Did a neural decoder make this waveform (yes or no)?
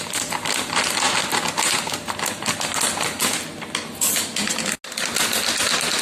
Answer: no